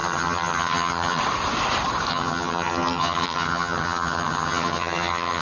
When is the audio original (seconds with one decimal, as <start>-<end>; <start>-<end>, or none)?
1.2-2.1

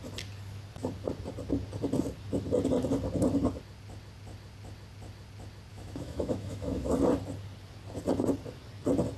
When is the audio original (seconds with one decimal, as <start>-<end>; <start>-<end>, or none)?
0.0-5.7; 6.9-9.2

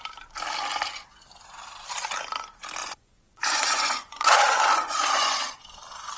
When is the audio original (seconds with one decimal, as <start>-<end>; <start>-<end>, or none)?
0.0-2.8; 5.6-6.2

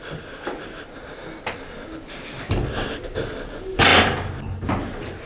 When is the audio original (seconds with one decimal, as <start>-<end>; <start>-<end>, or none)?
0.0-5.3

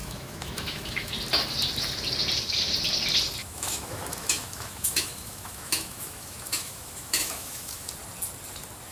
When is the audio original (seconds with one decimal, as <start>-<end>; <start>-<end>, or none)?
1.1-3.4; 7.9-8.9

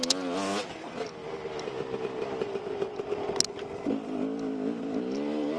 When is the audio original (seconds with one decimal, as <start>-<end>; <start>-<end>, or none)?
0.0-5.6

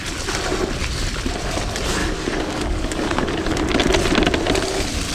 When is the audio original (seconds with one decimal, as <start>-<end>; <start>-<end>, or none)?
0.0-2.0; 3.3-5.1